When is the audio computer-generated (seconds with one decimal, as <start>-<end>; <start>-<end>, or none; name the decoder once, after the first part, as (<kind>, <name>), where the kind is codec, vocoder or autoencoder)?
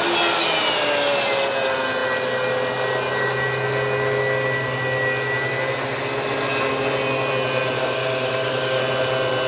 7.8-8.8 (codec, DAC)